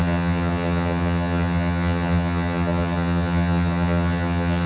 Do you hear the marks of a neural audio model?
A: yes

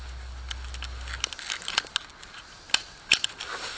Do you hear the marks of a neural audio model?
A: no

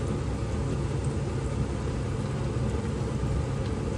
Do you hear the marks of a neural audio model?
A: no